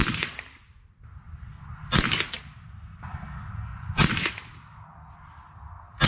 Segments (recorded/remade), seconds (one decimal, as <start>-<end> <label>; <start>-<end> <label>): 0.0-3.7 recorded; 3.7-4.3 remade; 4.3-6.1 recorded